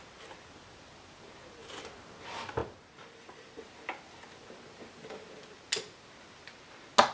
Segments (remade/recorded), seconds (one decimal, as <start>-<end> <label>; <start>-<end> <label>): 0.0-2.6 recorded; 2.6-3.6 remade; 3.6-7.1 recorded